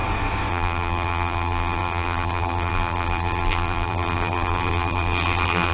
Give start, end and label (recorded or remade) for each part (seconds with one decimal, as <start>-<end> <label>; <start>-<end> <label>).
0.0-0.5 recorded; 0.5-5.7 remade